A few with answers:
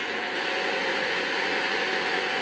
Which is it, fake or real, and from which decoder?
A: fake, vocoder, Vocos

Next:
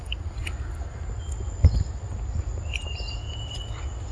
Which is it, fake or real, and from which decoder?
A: real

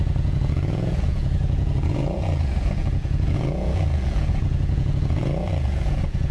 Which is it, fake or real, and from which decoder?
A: fake, vocoder, Vocos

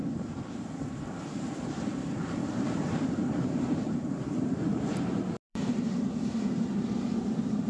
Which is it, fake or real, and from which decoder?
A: fake, vocoder, BigVGAN v2